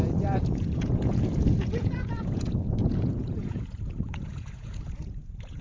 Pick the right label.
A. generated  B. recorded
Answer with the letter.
A